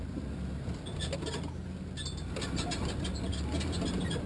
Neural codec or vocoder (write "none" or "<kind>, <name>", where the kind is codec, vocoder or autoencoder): none